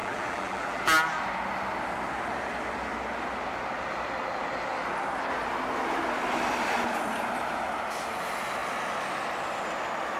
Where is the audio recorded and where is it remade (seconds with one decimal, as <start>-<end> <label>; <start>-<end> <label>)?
0.0-0.8 remade; 0.8-10.2 recorded